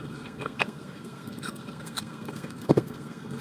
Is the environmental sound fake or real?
fake